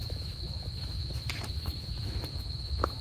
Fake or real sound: fake